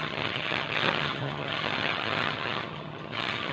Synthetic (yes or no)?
yes